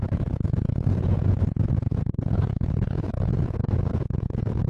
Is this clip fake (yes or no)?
yes